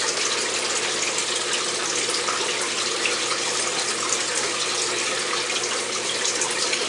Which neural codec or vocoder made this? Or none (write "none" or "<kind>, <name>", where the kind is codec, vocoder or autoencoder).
none